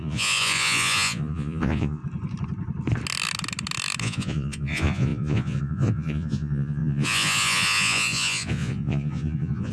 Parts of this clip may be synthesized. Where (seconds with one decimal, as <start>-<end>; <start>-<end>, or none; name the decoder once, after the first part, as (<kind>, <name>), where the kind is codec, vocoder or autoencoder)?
0.0-2.0 (vocoder, Vocos); 4.0-9.7